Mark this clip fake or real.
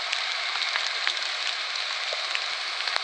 real